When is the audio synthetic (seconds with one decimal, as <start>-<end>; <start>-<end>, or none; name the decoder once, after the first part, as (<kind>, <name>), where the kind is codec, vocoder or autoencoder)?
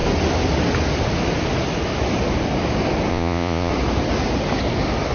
3.1-3.7 (vocoder, Vocos)